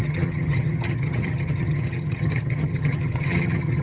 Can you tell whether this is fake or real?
fake